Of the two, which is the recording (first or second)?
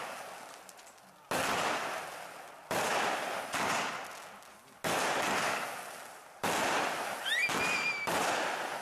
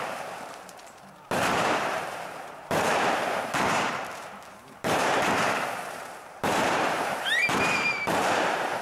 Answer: first